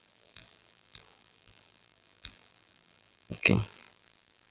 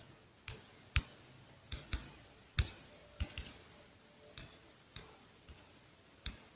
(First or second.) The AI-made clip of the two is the first